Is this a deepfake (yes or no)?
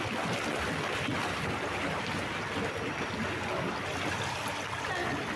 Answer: no